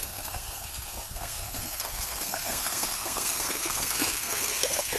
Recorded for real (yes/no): no